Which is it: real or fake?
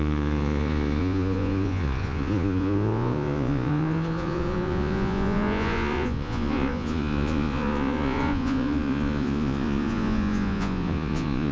fake